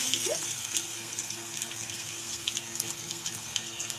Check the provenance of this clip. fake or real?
fake